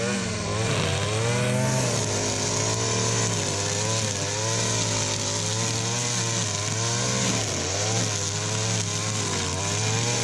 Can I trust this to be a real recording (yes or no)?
yes